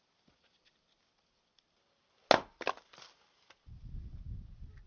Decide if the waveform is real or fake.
real